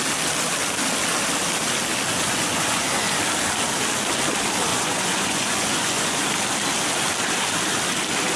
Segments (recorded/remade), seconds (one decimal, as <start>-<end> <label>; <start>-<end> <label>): 0.0-2.1 recorded; 2.1-3.2 remade; 3.2-4.7 recorded; 4.7-6.3 remade; 6.3-8.4 recorded